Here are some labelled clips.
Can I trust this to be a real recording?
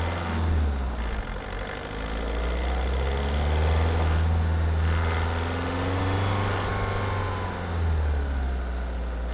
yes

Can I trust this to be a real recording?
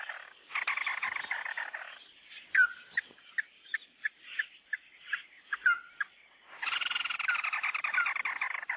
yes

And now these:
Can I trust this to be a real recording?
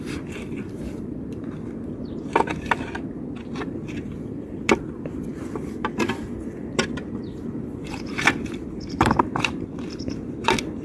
no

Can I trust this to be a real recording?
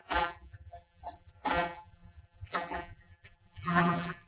no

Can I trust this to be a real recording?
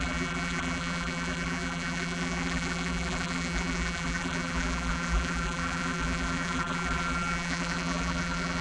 no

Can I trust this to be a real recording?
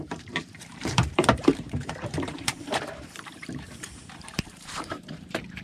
no